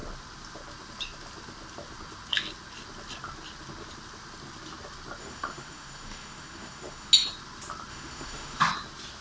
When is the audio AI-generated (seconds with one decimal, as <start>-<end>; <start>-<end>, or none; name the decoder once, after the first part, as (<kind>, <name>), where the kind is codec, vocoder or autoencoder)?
5.2-7.1 (autoencoder, DAC-VAE); 7.9-8.6